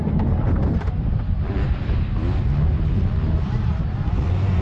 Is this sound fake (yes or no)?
no